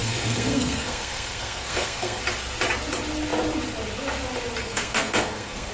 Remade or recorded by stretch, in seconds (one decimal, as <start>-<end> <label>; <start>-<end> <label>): 0.0-2.2 remade; 2.2-4.6 recorded; 4.6-5.7 remade